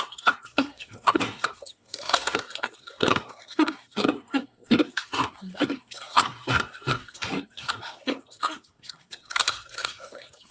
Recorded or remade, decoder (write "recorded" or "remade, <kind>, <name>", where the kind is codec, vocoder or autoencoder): remade, codec, SNAC